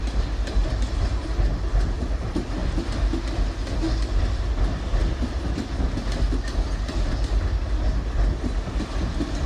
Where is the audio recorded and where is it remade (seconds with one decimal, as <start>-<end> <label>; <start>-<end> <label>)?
0.0-9.5 recorded